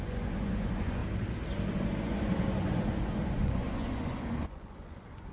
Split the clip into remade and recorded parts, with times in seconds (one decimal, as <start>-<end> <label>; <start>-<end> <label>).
0.0-1.0 remade; 1.0-2.0 recorded; 2.0-5.3 remade